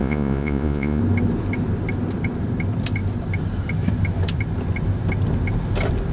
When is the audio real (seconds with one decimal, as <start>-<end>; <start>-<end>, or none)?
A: 1.0-6.1